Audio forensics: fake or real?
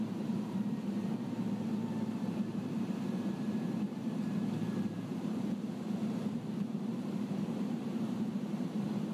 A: fake